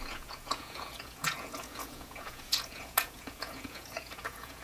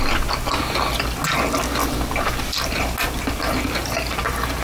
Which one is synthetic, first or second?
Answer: first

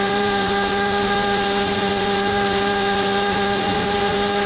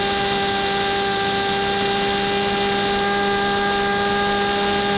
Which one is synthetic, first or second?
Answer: first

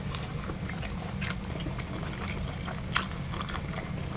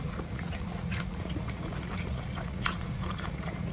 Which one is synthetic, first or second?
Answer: second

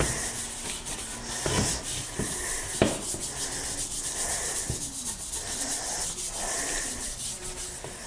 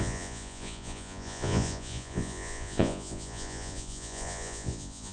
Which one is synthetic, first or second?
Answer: second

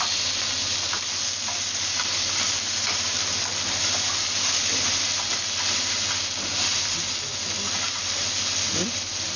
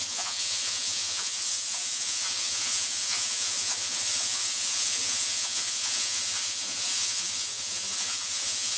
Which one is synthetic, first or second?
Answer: second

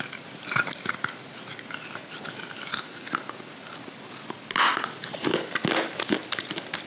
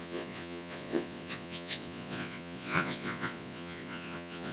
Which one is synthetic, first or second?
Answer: second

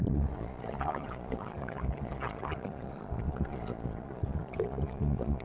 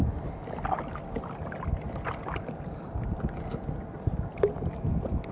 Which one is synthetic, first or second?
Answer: first